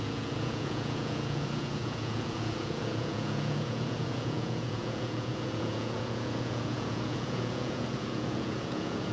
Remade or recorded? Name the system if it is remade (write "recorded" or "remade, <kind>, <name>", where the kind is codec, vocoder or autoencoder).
remade, vocoder, Vocos